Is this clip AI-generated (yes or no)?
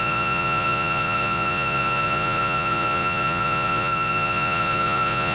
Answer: yes